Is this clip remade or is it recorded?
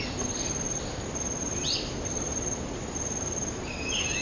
recorded